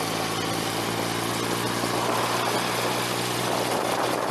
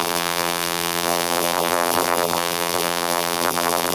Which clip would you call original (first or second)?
first